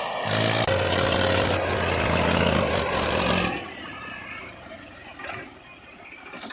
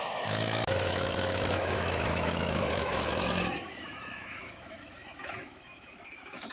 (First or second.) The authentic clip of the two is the first